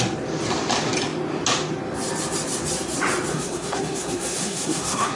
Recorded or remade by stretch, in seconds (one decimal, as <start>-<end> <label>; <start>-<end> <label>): 0.0-3.3 recorded; 3.3-5.2 remade